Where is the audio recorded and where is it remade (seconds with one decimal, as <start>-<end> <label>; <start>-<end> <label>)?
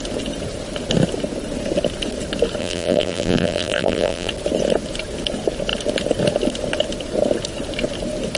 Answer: 0.0-2.6 recorded; 2.6-4.3 remade; 4.3-8.4 recorded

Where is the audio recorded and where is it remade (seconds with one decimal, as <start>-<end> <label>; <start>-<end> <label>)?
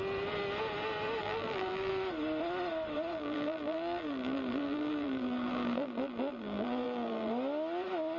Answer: 0.0-1.2 recorded; 1.2-1.9 remade; 1.9-3.1 recorded; 3.1-7.3 remade; 7.3-8.2 recorded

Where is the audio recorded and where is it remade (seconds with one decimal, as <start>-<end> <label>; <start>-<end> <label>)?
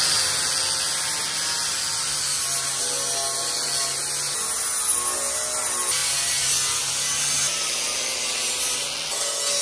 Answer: 0.0-9.6 recorded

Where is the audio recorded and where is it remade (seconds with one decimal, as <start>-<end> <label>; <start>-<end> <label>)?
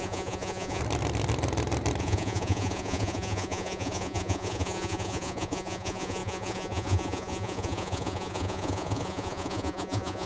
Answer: 0.0-0.8 remade; 0.8-2.0 recorded; 2.0-10.3 remade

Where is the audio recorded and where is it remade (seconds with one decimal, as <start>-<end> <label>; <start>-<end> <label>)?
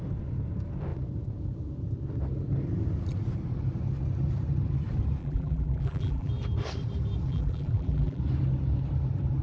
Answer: 0.0-5.2 recorded; 5.2-6.3 remade; 6.3-7.3 recorded; 7.3-8.2 remade; 8.2-9.4 recorded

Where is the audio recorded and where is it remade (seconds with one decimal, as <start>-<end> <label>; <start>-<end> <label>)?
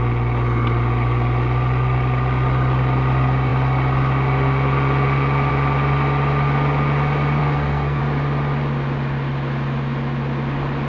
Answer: 0.0-7.4 recorded; 7.4-8.0 remade; 8.0-10.9 recorded